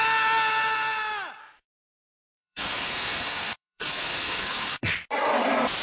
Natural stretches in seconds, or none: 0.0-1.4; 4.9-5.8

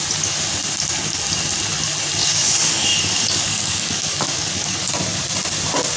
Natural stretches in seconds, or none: 0.0-2.2; 4.9-6.0

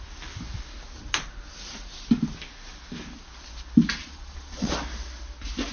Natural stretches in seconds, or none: 0.0-4.0; 4.7-5.7

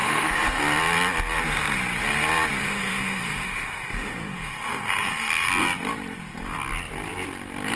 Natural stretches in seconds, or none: 0.6-2.6; 5.5-7.8

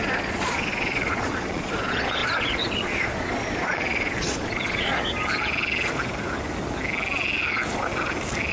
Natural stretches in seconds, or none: 4.9-8.5

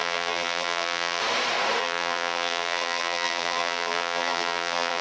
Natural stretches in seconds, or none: 1.2-1.8

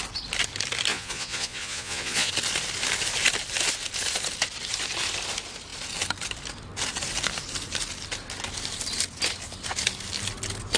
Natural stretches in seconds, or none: 0.0-0.9; 2.3-10.8

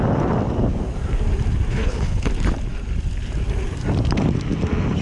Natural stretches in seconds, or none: 0.0-1.7; 2.3-5.0